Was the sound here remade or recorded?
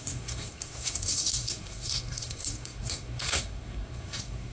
remade